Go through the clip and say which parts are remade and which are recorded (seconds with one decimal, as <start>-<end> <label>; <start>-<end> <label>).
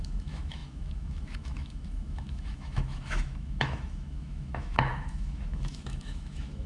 0.0-6.7 remade